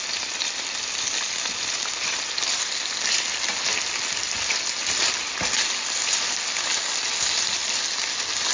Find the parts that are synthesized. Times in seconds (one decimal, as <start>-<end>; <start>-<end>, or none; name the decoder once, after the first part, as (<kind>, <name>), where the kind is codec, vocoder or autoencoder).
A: none